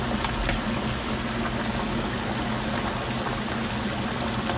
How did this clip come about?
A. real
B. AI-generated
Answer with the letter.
A